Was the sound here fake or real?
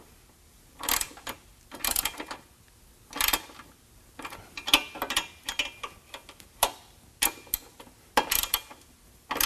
real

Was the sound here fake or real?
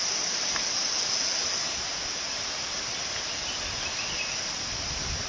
real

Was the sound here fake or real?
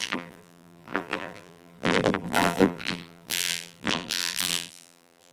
fake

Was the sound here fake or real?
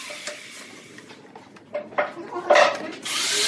real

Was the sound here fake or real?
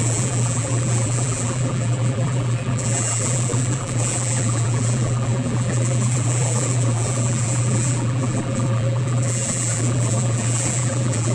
fake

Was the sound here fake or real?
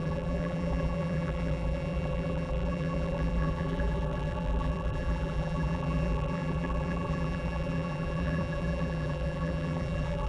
fake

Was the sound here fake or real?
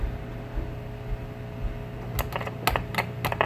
real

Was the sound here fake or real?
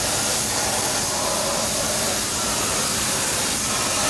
fake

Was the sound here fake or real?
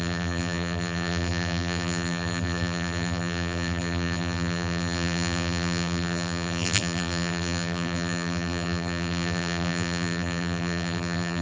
fake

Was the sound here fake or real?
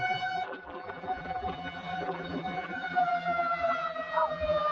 fake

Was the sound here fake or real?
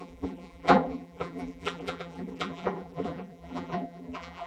fake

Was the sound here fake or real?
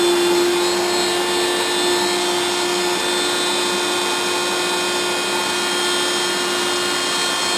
real